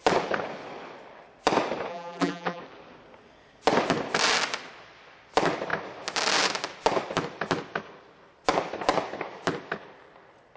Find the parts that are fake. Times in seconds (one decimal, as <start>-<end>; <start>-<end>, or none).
1.9-2.6